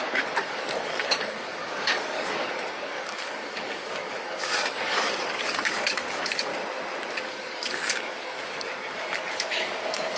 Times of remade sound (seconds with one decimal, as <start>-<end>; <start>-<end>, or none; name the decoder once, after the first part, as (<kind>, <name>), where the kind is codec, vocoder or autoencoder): 0.0-6.5 (codec, DAC); 7.3-10.2

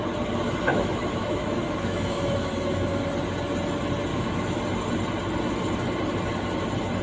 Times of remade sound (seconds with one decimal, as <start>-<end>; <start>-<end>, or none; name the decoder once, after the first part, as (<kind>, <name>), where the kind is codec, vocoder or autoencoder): 0.7-3.0 (autoencoder, DAC-VAE); 4.1-4.6

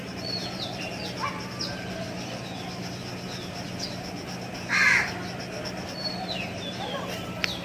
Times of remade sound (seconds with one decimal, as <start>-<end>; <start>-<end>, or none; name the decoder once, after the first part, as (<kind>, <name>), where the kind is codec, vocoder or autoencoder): none

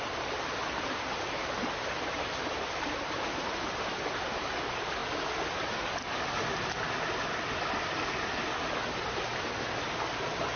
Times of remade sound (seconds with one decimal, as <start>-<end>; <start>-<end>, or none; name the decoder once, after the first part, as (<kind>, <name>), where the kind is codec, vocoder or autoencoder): none

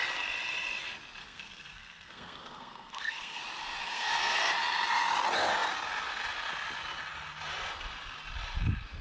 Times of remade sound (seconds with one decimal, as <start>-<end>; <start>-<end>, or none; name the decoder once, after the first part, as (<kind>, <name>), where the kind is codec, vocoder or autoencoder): 1.2-3.4 (codec, SNAC); 3.8-4.4

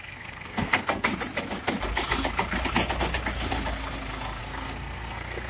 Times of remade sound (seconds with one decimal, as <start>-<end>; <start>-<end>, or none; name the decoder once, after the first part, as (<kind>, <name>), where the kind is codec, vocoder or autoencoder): 0.0-1.1 (codec, SNAC); 4.4-5.5